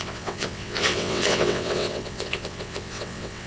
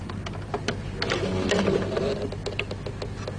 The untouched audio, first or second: second